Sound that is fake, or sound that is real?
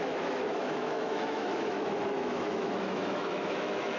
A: fake